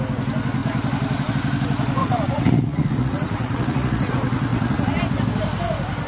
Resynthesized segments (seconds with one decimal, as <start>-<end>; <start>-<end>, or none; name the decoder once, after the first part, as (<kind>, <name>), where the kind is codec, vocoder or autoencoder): 2.0-4.1 (vocoder, Vocos); 4.5-5.0